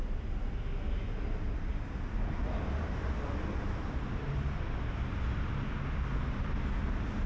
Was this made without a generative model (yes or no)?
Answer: yes